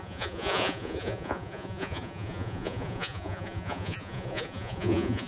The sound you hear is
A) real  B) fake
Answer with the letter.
B